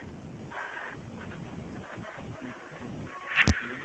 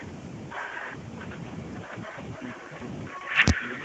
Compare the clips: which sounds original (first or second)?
first